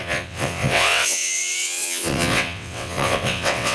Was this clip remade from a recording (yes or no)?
yes